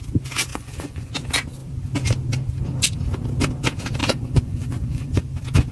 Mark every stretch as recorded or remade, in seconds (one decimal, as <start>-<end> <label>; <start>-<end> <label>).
0.0-0.5 recorded; 0.5-1.1 remade; 1.1-4.0 recorded; 4.0-5.2 remade; 5.2-5.7 recorded